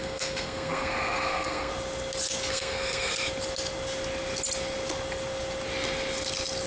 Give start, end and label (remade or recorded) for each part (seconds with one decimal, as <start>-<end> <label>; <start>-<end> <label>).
0.0-1.7 remade; 1.7-2.5 recorded; 2.5-3.1 remade; 3.1-6.7 recorded